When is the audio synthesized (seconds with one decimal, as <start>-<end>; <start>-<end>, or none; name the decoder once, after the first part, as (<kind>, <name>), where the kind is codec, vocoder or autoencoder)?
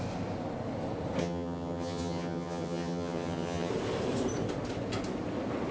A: 1.2-3.7 (vocoder, HiFi-GAN)